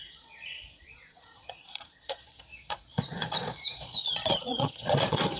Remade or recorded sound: remade